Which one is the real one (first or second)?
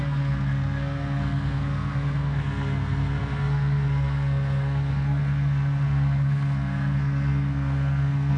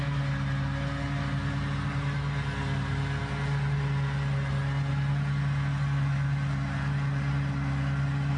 second